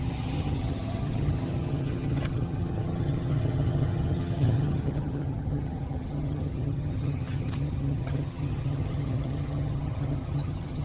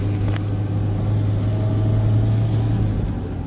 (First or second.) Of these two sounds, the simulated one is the first